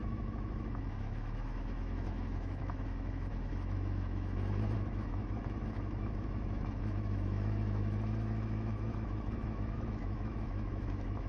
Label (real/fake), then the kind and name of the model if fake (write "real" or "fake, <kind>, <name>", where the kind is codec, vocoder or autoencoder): fake, autoencoder, DAC-VAE